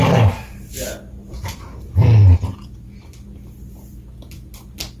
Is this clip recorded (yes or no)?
yes